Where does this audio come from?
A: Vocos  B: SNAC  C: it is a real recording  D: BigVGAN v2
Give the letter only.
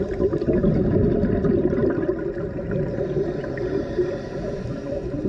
C